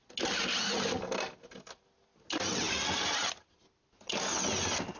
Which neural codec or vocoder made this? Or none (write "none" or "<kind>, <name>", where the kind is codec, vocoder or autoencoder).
none